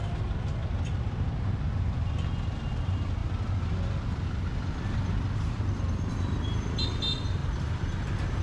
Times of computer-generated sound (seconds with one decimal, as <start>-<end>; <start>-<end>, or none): none